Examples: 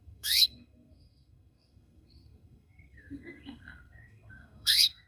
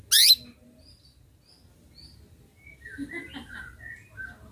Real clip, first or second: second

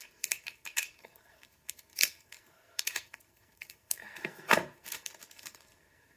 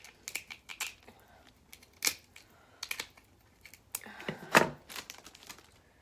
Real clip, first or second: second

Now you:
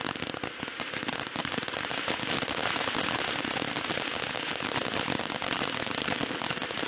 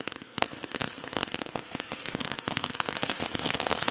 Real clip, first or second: first